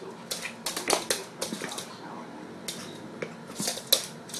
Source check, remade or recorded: recorded